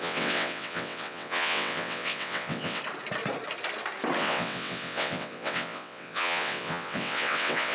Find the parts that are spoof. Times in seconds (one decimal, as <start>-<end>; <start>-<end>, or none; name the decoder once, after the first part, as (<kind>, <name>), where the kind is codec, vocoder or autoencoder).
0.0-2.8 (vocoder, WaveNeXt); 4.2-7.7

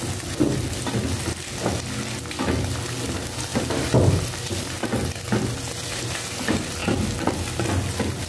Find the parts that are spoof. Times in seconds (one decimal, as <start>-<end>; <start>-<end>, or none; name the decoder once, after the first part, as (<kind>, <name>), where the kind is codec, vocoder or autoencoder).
none

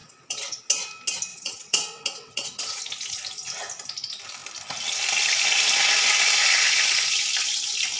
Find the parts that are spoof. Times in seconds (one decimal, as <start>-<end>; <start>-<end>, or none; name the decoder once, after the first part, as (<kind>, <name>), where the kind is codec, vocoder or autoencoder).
0.0-0.6 (vocoder, WaveNeXt); 1.3-2.8

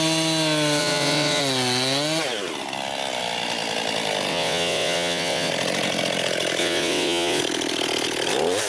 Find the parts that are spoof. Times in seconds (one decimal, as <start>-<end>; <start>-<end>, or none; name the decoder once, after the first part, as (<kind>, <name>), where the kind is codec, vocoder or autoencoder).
0.8-1.4 (vocoder, WaveNeXt); 4.3-5.5; 6.6-7.4